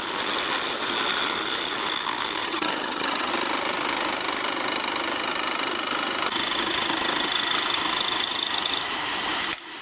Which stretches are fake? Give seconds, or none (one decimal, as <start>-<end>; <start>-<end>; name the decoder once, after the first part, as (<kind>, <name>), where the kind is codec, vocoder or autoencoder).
2.4-3.3 (vocoder, HiFi-GAN)